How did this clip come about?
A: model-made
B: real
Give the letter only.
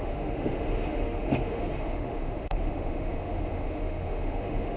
A